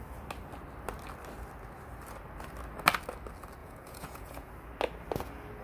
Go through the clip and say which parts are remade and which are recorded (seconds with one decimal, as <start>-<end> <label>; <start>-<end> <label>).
0.0-3.6 recorded; 3.6-4.5 remade; 4.5-5.6 recorded